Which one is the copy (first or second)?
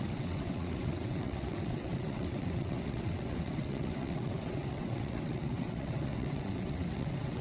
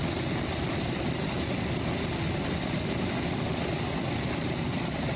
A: first